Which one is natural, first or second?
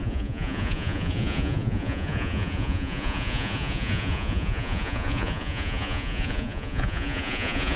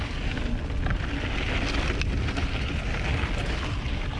second